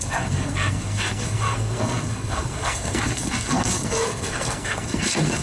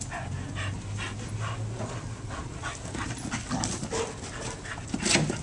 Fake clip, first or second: first